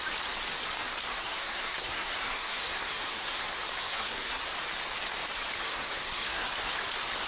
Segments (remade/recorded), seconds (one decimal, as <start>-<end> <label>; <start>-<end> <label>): 0.0-1.1 recorded; 1.1-3.4 remade; 3.4-3.8 recorded; 3.8-4.4 remade; 4.4-5.6 recorded; 5.6-6.5 remade; 6.5-7.3 recorded